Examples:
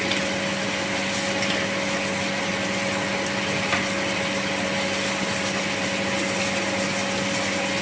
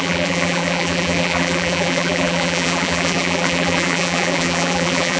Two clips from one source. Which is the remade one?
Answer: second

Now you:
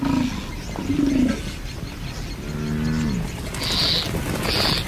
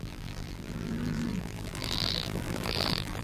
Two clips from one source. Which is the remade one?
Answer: second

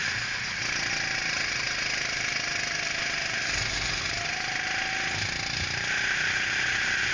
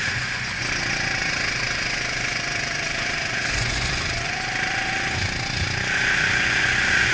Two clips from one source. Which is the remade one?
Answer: second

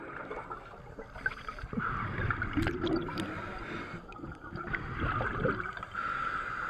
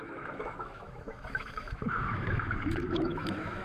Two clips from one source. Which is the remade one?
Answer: second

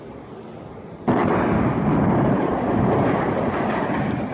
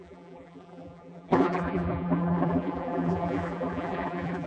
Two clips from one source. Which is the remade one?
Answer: second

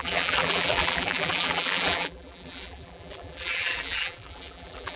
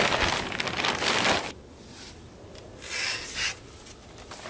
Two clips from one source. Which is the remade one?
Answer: first